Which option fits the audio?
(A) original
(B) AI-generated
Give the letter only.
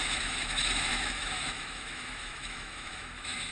B